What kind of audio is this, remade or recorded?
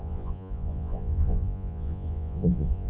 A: remade